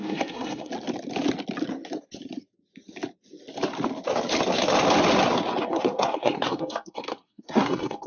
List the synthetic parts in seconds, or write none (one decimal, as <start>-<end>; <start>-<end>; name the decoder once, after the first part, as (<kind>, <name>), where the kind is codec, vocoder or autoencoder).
0.0-0.7 (codec, SNAC); 5.6-8.1